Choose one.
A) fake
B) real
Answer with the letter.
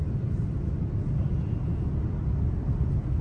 B